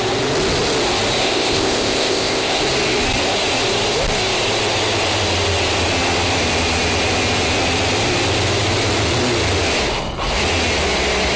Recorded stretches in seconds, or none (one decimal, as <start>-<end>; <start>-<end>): 0.0-1.2; 2.6-11.4